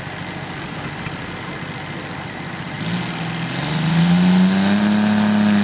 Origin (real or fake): real